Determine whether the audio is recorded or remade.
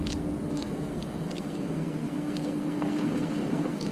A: remade